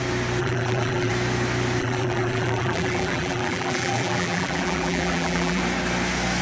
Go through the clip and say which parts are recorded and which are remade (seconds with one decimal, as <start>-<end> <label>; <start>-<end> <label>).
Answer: 0.0-0.4 recorded; 0.4-1.1 remade; 1.1-1.8 recorded; 1.8-5.6 remade; 5.6-6.4 recorded